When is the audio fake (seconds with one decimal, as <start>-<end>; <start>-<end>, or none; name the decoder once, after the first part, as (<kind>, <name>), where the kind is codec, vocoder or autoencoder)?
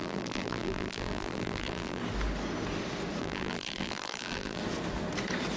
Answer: 0.0-2.0 (vocoder, BigVGAN v2); 3.2-4.6